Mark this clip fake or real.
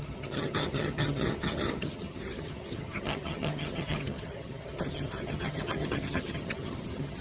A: fake